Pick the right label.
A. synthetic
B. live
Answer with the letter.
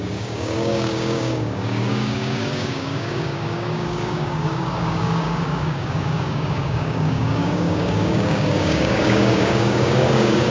A